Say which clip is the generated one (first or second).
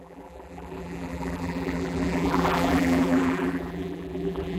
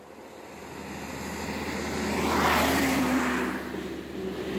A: first